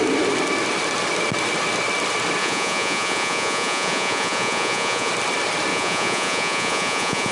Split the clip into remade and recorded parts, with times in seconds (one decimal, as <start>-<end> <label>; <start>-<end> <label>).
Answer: 0.0-2.4 recorded; 2.4-5.1 remade; 5.1-5.7 recorded; 5.7-7.3 remade